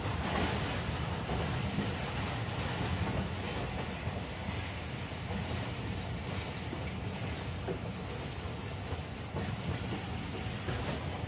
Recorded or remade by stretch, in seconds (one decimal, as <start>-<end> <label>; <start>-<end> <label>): 0.0-11.3 recorded